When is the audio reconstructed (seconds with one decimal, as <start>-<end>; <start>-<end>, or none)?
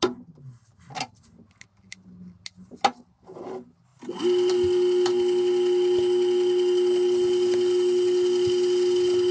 none